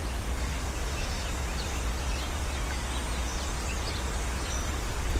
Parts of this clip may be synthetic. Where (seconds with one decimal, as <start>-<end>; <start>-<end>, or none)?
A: none